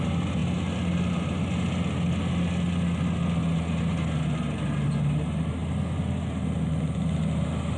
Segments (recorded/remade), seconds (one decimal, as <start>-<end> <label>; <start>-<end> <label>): 0.0-7.8 recorded